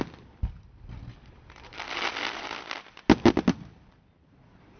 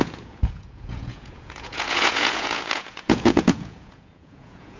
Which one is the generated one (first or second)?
second